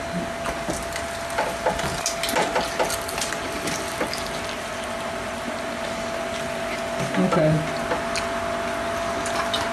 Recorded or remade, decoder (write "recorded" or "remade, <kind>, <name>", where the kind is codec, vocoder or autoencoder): recorded